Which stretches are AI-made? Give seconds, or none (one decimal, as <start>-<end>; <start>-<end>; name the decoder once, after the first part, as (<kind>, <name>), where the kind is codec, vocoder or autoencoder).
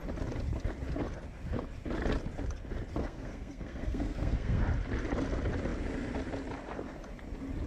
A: 3.0-4.6 (codec, SNAC)